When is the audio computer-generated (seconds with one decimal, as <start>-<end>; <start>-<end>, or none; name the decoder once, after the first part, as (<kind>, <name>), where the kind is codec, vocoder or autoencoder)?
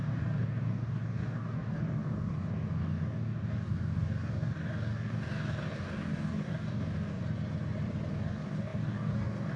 0.0-7.2 (codec, DAC); 8.1-9.6